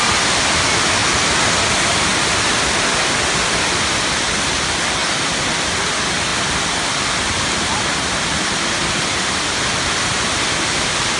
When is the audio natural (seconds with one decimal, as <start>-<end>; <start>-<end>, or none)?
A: 0.0-11.2